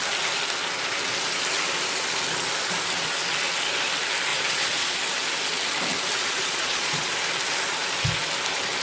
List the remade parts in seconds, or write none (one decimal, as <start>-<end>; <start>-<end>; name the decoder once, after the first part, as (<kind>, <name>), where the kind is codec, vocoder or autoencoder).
4.3-5.0 (vocoder, Vocos); 6.2-7.1